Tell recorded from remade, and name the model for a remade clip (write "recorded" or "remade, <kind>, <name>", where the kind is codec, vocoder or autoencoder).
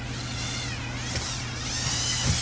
recorded